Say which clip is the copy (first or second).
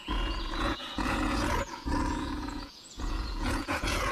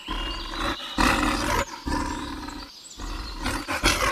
first